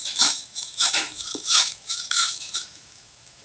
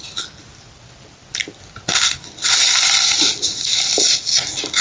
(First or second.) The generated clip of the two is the first